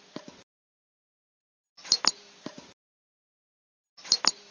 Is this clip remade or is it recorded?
recorded